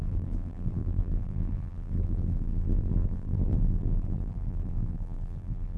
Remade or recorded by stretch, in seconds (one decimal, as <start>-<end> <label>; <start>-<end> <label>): 0.0-5.8 remade

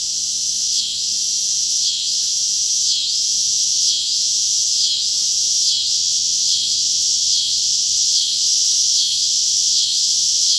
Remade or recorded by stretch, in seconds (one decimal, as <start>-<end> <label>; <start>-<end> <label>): 0.0-1.1 remade; 1.1-1.6 recorded; 1.6-2.3 remade; 2.3-3.6 recorded; 3.6-4.1 remade; 4.1-5.9 recorded; 5.9-10.6 remade

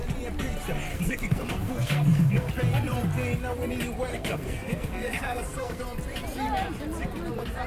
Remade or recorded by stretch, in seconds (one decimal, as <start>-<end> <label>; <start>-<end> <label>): 0.0-0.9 recorded; 0.9-2.5 remade; 2.5-4.1 recorded; 4.1-5.8 remade; 5.8-7.7 recorded

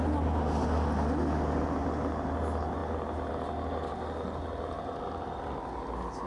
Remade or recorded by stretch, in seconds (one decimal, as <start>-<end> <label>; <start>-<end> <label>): 0.0-6.3 recorded

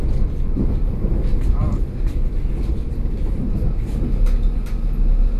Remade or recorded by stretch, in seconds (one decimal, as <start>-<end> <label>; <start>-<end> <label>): 0.0-5.4 recorded

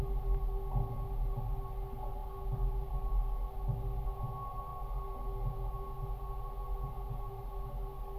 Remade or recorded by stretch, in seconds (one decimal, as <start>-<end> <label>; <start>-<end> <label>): 0.0-8.2 recorded